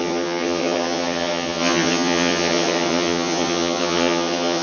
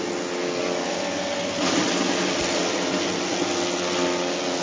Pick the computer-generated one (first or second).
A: first